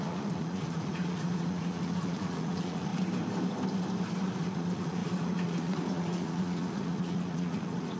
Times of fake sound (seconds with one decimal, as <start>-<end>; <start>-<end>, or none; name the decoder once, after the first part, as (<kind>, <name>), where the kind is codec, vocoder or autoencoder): 0.0-2.9 (vocoder, Vocos); 4.2-8.0